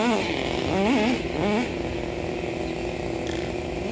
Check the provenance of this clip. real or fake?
real